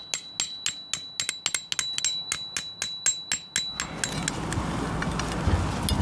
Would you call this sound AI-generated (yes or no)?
no